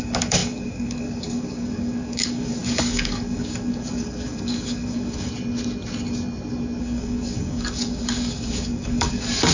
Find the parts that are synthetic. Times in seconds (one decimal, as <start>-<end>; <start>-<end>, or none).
0.0-5.3; 6.8-9.5